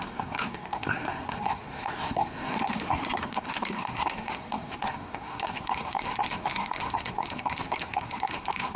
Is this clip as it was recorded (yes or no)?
no